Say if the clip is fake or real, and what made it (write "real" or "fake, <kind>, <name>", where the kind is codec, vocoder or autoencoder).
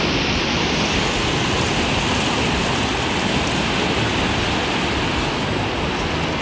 real